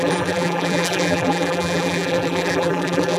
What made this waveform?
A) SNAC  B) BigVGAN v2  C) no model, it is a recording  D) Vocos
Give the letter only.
B